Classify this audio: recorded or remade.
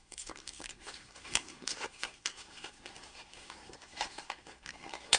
remade